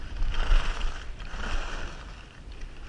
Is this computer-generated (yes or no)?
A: no